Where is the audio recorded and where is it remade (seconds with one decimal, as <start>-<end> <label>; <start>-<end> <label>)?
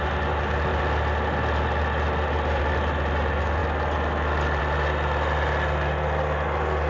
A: 0.0-6.9 recorded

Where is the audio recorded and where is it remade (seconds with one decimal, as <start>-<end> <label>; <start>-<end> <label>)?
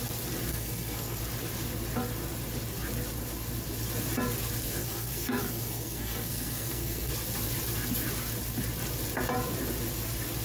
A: 0.0-0.5 recorded; 0.5-1.2 remade; 1.2-4.8 recorded; 4.8-7.1 remade; 7.1-10.4 recorded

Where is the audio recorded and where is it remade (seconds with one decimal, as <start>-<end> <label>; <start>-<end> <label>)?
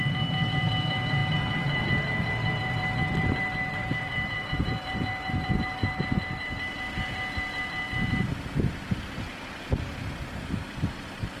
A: 0.0-5.8 remade; 5.8-9.8 recorded; 9.8-11.4 remade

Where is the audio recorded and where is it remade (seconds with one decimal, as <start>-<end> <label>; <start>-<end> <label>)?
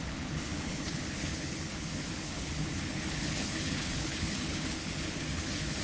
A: 0.0-5.8 remade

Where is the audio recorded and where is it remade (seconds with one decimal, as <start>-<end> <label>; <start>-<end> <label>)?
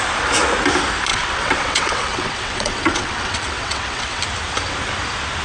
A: 0.0-1.1 recorded; 1.1-4.2 remade; 4.2-5.4 recorded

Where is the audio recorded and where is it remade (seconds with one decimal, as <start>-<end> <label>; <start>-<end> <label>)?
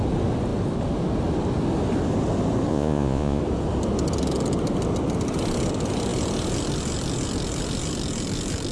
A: 0.0-2.7 recorded; 2.7-3.4 remade; 3.4-8.7 recorded